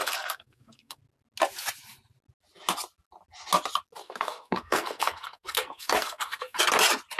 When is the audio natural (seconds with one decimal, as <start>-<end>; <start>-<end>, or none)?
1.0-4.0; 6.6-7.2